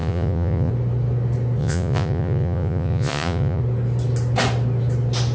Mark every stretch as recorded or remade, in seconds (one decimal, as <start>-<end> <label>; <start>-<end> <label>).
0.0-0.7 remade; 0.7-1.6 recorded; 1.6-3.6 remade; 3.6-5.3 recorded